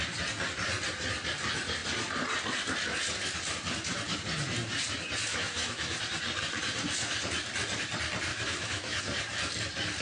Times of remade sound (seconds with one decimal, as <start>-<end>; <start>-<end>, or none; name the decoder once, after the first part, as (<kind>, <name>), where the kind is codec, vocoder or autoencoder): 5.3-6.0 (autoencoder, DAC-VAE); 8.3-9.0